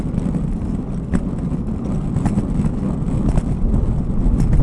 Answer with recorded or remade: recorded